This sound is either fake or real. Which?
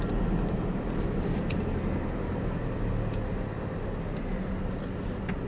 real